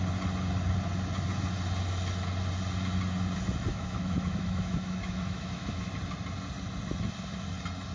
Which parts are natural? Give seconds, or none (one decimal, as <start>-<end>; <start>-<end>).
0.0-3.7; 5.9-7.9